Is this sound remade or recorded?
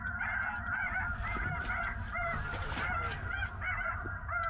recorded